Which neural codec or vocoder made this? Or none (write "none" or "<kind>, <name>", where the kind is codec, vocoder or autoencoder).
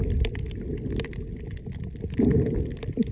none